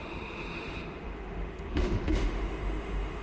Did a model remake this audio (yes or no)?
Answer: yes